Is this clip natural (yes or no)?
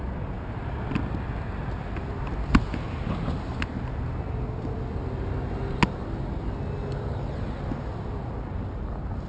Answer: yes